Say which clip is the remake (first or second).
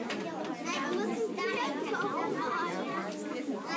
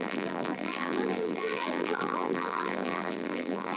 second